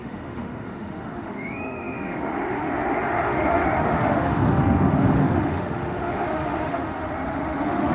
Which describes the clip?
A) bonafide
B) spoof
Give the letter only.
B